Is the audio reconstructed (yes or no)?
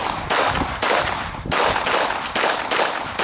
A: no